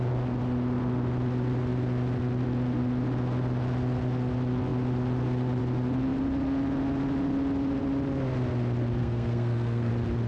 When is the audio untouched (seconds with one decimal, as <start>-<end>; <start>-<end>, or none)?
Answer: 0.0-9.0; 9.9-10.3